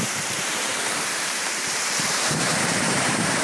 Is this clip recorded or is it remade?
remade